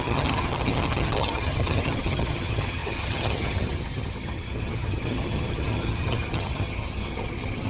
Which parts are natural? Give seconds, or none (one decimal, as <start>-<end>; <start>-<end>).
none